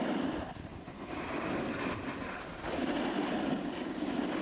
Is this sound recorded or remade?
recorded